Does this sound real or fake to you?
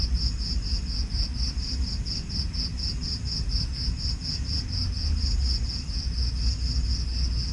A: real